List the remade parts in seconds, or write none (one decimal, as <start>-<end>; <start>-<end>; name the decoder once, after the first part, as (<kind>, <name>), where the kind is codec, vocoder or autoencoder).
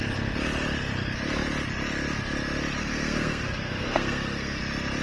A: 2.8-4.6 (codec, SNAC)